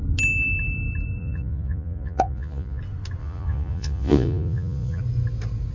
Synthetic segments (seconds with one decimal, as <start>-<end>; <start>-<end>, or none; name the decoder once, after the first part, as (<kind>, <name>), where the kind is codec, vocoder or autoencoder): 1.2-2.8 (vocoder, Vocos); 3.2-5.0